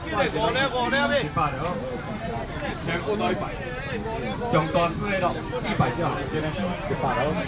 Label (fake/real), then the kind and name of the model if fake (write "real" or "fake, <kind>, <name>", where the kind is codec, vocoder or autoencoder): real